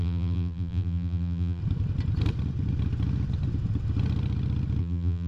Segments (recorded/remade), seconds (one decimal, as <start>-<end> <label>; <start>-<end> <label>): 0.0-1.6 remade; 1.6-4.8 recorded; 4.8-5.3 remade